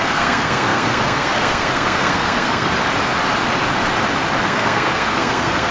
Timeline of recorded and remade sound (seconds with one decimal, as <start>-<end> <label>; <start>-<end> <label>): 0.0-2.7 remade; 2.7-4.4 recorded; 4.4-5.7 remade